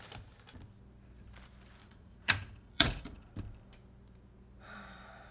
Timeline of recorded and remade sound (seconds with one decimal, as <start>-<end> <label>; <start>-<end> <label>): 0.0-1.8 recorded; 1.8-3.3 remade; 3.3-5.3 recorded